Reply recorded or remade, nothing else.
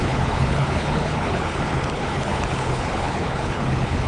remade